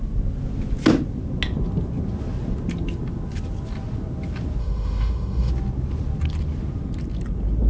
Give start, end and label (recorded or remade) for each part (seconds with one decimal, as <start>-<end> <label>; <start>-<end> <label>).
0.0-4.6 recorded; 4.6-5.5 remade; 5.5-7.7 recorded